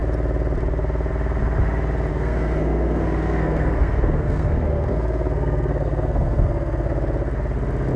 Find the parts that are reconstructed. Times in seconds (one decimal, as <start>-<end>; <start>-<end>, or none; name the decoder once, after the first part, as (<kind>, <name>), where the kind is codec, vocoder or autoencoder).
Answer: 2.1-6.9 (codec, SNAC)